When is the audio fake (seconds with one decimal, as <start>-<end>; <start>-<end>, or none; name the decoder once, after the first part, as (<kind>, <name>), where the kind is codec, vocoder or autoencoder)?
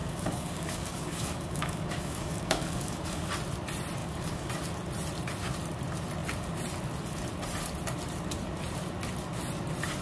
0.0-3.3 (codec, DAC); 4.0-4.5